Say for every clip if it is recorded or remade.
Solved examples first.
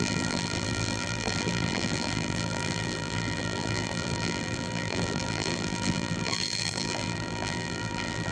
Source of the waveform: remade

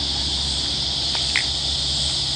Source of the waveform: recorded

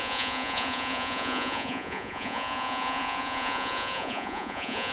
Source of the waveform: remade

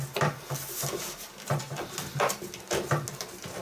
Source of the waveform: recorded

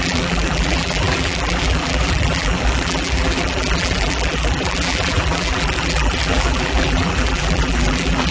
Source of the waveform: remade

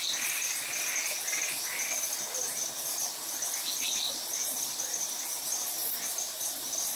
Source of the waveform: recorded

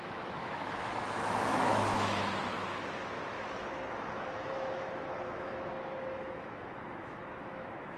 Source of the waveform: remade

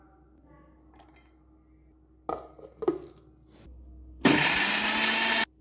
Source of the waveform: recorded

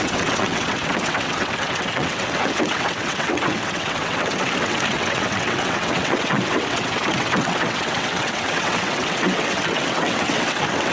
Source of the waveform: remade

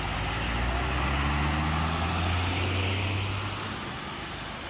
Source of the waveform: recorded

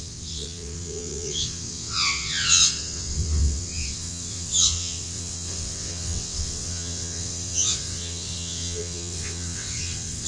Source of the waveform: remade